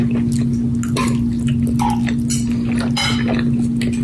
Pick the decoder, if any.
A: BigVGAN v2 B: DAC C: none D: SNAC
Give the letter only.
C